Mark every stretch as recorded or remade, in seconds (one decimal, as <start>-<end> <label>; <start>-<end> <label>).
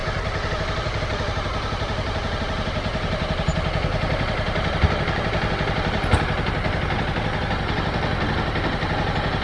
0.0-9.4 recorded